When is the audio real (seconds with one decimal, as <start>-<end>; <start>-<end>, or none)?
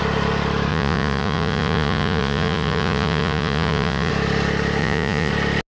0.0-0.7; 4.1-4.8; 5.3-5.7